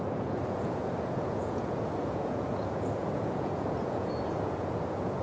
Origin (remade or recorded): remade